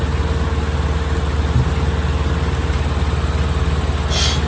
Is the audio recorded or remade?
recorded